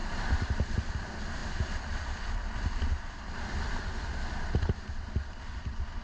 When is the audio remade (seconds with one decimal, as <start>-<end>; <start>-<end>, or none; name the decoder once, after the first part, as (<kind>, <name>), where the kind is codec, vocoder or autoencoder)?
none